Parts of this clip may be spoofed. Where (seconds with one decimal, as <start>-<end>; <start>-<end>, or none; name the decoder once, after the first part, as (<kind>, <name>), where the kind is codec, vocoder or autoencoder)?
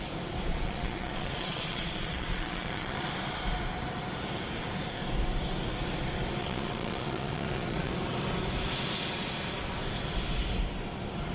0.5-3.1 (vocoder, Vocos); 6.4-7.9